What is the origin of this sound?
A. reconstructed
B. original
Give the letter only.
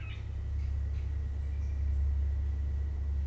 B